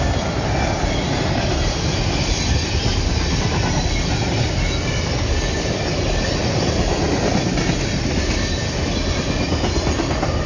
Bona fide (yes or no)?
yes